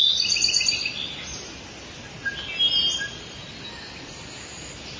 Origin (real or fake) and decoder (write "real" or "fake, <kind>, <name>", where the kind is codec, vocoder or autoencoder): real